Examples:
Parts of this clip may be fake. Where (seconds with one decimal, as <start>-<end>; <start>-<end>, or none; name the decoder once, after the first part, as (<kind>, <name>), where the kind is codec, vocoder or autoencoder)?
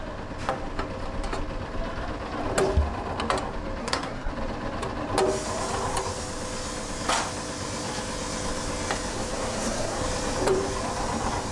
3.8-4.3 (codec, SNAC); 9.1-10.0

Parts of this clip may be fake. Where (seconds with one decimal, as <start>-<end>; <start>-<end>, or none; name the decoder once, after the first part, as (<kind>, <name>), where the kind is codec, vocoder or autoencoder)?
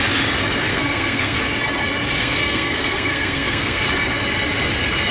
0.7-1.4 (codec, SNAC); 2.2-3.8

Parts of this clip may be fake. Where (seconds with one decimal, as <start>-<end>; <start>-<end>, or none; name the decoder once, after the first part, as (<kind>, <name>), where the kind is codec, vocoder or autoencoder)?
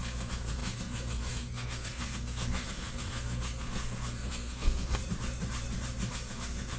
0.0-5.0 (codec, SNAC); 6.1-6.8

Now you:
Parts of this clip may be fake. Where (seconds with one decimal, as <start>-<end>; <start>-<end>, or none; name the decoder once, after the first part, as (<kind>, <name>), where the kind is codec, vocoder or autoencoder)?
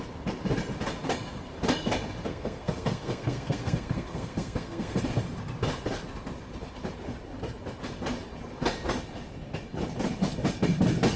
2.3-5.0 (codec, SNAC)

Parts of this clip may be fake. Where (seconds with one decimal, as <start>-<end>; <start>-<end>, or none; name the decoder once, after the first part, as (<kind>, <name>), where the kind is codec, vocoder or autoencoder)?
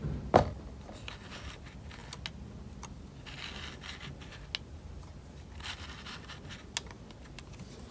none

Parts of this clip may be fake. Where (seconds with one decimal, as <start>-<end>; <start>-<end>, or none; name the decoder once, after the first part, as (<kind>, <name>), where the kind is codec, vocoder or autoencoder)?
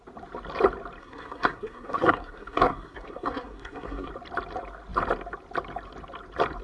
1.0-4.1 (codec, SNAC)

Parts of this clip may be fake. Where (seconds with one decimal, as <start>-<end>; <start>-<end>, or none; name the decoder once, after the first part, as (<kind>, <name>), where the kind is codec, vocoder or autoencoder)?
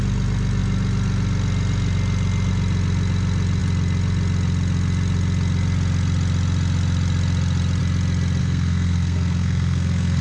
8.4-10.2 (codec, SNAC)